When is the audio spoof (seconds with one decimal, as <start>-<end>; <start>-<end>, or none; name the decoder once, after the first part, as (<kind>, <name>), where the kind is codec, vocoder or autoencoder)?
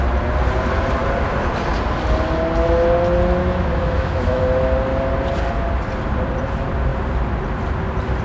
3.4-4.4 (autoencoder, DAC-VAE)